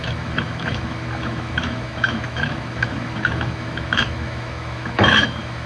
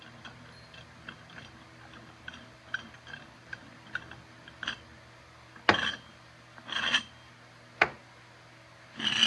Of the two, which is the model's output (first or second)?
first